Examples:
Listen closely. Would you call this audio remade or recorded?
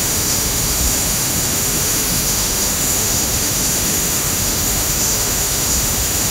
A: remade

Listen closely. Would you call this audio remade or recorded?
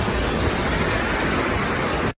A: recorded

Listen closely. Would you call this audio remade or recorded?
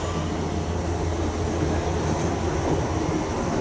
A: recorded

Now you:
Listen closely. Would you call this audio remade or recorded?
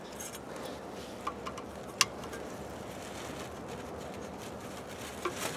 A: recorded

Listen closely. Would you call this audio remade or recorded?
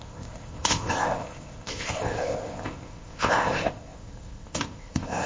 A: remade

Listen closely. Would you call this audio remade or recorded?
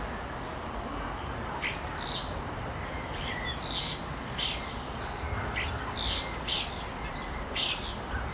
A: recorded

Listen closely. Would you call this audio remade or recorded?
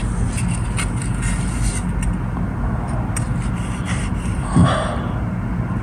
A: recorded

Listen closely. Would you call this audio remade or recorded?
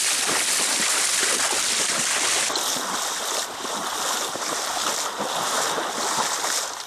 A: recorded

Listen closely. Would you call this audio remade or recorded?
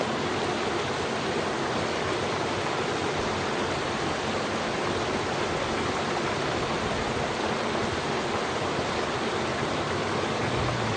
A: recorded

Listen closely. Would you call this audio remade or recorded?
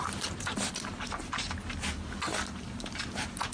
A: recorded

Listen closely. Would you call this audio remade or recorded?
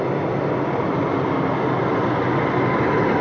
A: recorded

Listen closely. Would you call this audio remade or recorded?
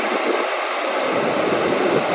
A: recorded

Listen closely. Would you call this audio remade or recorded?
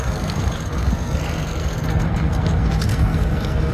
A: remade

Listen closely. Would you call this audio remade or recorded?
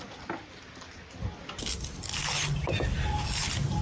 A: recorded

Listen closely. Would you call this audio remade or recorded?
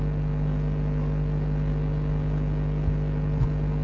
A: recorded